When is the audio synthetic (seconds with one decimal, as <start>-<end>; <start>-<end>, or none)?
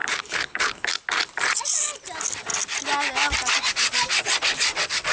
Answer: 0.0-0.9